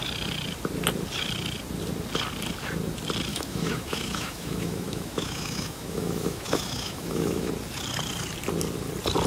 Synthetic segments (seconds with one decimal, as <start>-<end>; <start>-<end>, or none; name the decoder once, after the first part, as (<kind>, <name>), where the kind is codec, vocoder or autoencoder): 3.3-7.5 (autoencoder, DAC-VAE)

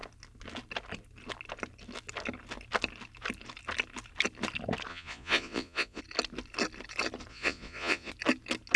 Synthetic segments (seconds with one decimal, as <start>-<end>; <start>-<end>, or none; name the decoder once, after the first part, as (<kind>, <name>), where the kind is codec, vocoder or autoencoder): 4.9-6.0 (vocoder, Vocos); 7.3-8.1

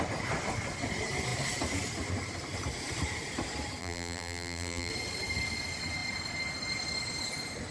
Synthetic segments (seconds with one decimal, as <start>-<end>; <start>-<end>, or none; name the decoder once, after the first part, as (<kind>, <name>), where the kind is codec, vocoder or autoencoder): 3.8-4.9 (vocoder, BigVGAN v2)

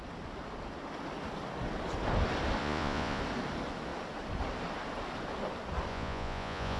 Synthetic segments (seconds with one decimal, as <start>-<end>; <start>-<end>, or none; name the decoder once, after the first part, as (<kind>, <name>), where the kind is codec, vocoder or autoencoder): 2.6-3.2 (vocoder, Vocos); 5.9-6.8

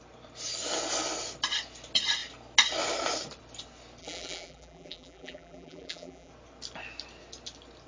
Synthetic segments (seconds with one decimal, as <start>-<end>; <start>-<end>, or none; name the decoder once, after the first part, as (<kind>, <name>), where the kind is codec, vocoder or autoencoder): 4.0-6.3 (vocoder, BigVGAN v2)